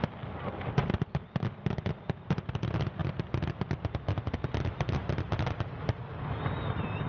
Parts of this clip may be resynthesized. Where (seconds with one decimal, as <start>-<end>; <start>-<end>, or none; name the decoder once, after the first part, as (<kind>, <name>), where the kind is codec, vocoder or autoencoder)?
none